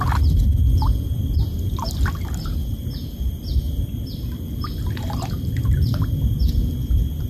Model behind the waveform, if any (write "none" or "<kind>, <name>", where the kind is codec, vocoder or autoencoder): none